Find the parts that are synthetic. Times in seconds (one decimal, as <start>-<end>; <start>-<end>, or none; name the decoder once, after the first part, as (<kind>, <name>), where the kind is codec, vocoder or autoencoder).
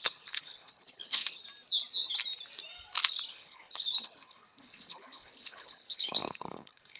0.0-1.4 (codec, HILCodec); 3.3-7.0